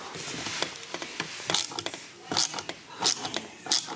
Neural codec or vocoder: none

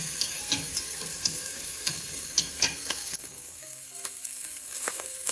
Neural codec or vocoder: codec, SNAC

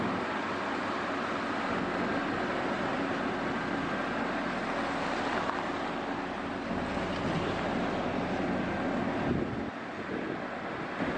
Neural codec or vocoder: none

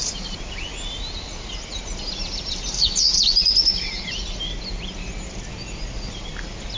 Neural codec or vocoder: none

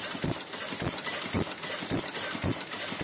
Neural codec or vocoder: none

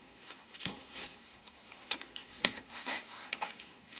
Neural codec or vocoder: codec, SNAC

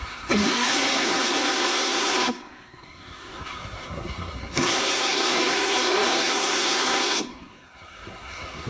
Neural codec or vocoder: codec, SNAC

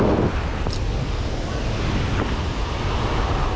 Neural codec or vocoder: none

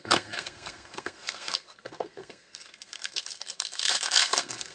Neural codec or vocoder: codec, SNAC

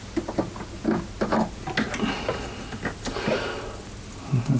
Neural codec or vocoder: none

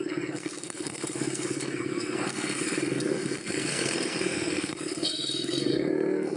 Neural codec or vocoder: codec, SNAC